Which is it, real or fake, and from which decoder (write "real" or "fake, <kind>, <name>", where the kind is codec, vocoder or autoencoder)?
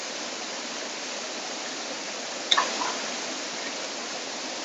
real